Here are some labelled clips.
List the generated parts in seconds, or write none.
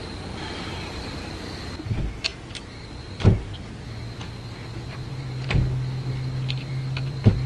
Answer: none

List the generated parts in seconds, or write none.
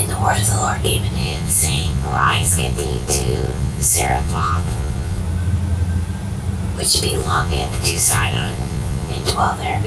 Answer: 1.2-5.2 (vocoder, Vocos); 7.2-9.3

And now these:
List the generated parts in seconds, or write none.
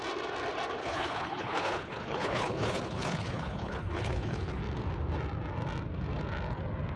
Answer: 0.8-4.6 (codec, HILCodec)